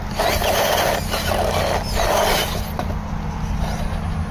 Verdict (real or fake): real